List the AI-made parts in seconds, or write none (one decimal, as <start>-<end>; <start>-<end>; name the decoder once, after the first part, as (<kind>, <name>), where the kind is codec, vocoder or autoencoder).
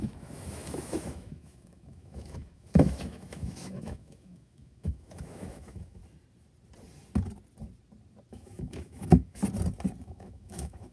0.0-6.0 (autoencoder, DAC-VAE); 8.3-9.4; 10.0-10.9